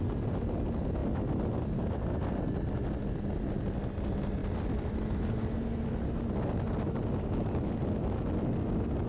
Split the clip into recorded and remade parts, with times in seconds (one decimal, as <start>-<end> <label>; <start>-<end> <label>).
0.0-9.1 recorded